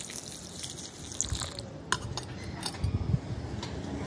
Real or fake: real